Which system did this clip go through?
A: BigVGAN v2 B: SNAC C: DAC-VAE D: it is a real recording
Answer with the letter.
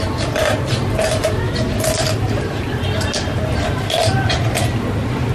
D